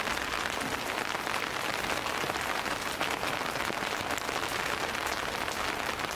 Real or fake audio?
real